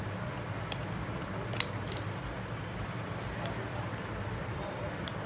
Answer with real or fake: real